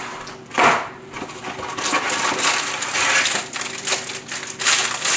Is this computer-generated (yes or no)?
no